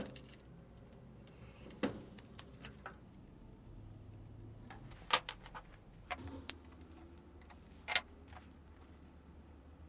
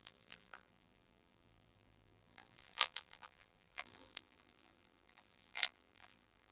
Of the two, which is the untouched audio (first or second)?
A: first